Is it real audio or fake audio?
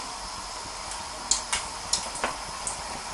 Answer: real